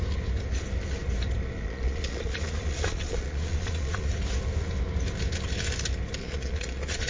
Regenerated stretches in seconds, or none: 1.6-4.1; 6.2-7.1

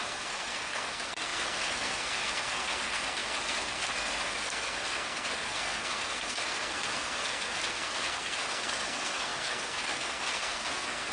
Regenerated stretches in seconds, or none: 0.0-11.1

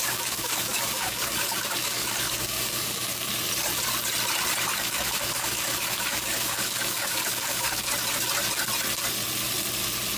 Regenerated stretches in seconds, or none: 0.0-3.3; 4.7-7.9